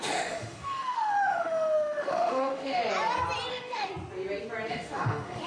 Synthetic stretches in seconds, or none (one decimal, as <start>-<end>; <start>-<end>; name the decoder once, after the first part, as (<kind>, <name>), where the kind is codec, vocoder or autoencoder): 0.0-2.8 (autoencoder, DAC-VAE); 3.5-3.9; 4.7-5.5